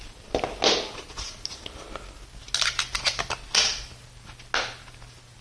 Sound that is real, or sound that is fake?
real